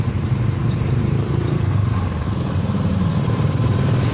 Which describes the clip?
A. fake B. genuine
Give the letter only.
A